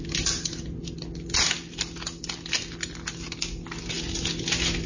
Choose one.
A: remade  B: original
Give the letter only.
B